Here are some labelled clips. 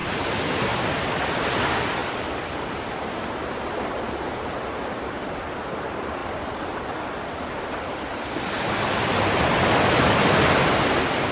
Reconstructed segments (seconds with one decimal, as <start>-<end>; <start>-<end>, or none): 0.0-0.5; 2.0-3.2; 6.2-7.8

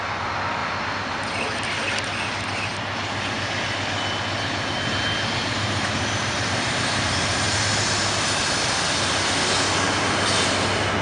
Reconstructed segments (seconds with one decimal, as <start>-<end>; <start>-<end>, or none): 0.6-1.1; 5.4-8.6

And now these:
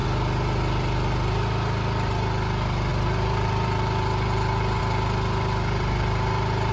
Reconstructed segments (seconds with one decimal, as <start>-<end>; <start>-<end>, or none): 2.9-4.8

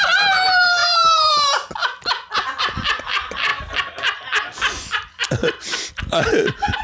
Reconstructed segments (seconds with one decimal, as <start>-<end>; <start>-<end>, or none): 0.0-1.8; 3.1-3.5; 6.0-6.8